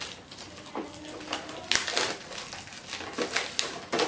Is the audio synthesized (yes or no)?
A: no